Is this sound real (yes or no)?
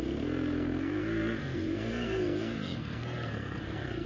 no